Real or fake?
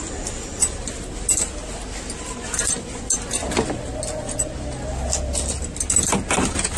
real